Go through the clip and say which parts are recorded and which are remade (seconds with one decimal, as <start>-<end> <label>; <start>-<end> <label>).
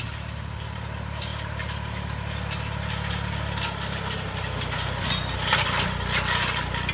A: 0.0-6.9 recorded